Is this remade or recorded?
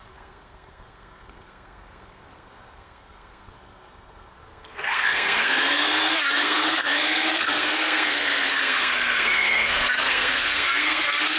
remade